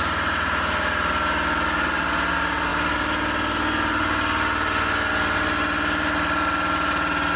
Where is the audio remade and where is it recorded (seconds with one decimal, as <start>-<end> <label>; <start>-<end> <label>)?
0.0-7.4 recorded